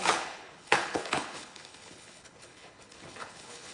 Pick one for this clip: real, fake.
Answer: fake